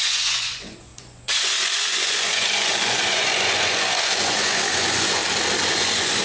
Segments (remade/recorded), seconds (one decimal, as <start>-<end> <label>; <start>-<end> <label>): 0.0-5.2 remade; 5.2-5.7 recorded; 5.7-6.2 remade